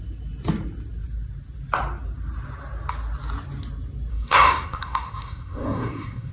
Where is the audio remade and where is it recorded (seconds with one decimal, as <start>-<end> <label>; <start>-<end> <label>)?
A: 0.0-4.1 recorded; 4.1-6.3 remade